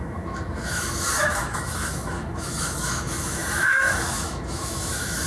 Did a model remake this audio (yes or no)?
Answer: yes